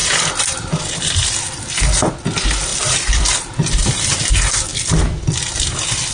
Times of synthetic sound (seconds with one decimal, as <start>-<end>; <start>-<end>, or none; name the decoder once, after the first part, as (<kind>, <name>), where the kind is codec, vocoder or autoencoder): 2.7-4.3 (vocoder, BigVGAN v2)